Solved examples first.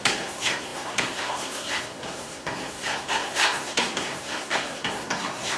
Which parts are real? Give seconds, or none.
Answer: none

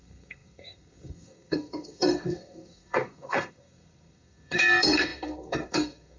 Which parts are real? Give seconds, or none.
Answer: none

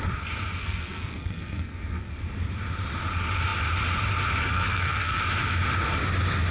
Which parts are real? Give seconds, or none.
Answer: 0.0-0.6; 2.1-4.4; 5.2-6.5

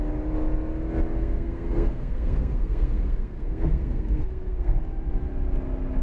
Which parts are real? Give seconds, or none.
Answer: 0.0-1.2; 4.8-6.0

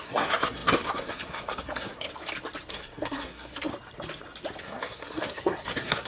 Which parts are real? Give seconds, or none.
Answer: 2.1-2.7; 3.7-4.6

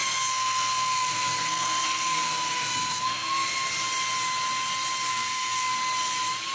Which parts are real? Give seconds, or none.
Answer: 3.7-5.1; 5.7-6.5

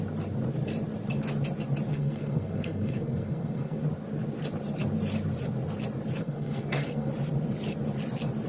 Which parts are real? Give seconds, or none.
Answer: 0.0-1.9; 3.8-6.2; 7.1-8.5

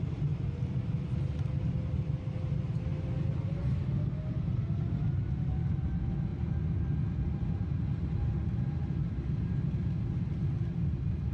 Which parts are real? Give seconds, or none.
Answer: 0.0-11.3